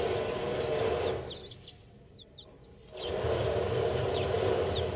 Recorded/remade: recorded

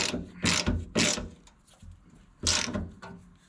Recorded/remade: recorded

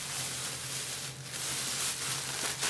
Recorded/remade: recorded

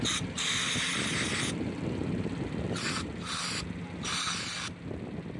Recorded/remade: recorded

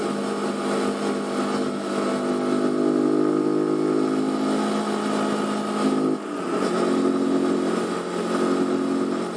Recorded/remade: recorded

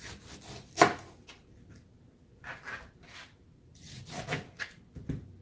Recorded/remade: recorded